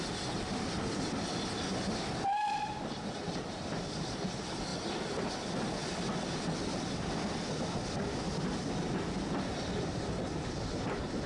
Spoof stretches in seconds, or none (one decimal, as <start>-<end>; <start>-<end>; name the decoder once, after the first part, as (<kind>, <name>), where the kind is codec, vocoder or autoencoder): none